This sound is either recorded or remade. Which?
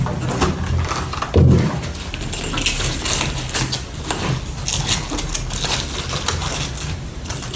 recorded